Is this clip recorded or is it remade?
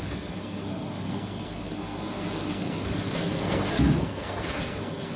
remade